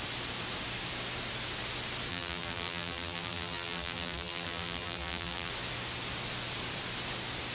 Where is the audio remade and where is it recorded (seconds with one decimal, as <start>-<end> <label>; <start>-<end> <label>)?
0.0-2.1 recorded; 2.1-5.5 remade; 5.5-7.5 recorded